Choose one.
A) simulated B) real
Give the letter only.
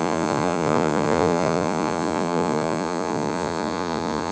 A